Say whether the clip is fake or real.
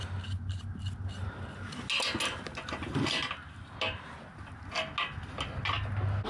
real